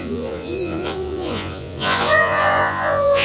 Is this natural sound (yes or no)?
no